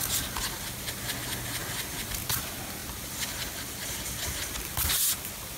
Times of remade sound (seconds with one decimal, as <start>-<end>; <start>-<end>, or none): none